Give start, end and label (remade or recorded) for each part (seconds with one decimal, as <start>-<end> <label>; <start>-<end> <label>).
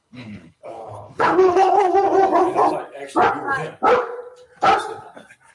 0.0-1.9 remade; 1.9-5.5 recorded